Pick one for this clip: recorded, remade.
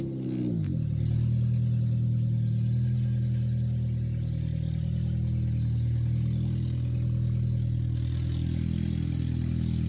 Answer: recorded